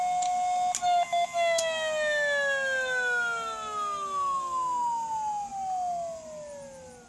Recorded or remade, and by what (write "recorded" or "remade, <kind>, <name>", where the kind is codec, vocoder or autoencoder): recorded